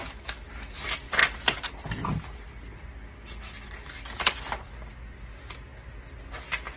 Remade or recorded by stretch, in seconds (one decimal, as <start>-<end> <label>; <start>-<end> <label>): 0.0-6.8 recorded